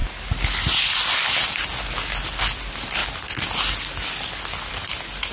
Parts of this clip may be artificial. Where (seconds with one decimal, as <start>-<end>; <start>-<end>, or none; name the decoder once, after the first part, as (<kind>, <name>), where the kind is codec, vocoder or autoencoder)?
none